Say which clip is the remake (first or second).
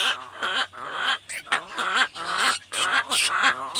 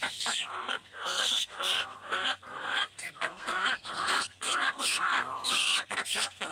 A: second